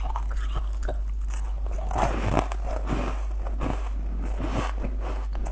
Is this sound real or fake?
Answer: real